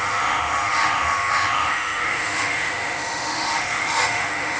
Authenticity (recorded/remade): remade